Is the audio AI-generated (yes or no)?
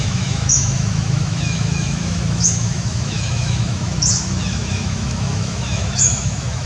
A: yes